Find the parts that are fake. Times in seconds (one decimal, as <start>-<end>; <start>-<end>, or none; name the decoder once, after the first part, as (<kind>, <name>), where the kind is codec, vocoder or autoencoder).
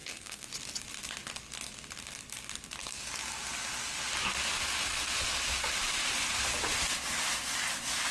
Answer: 0.0-0.5 (codec, SNAC)